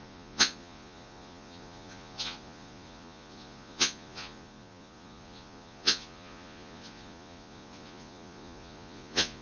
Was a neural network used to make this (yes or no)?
yes